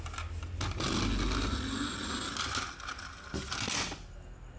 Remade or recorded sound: recorded